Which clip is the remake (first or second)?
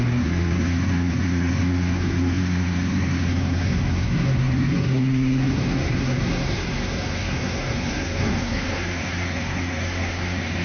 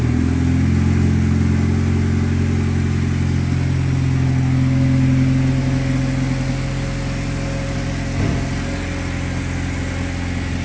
first